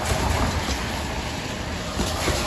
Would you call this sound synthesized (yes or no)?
no